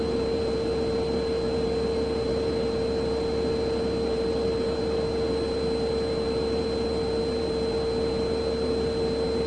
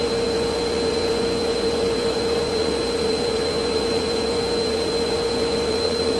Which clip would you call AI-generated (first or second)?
second